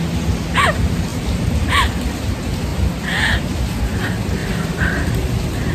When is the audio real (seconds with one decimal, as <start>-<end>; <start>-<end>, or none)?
0.0-1.1; 1.9-4.4; 5.1-5.7